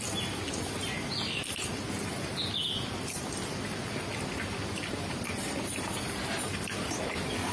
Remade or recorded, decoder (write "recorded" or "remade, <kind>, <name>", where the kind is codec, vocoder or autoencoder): recorded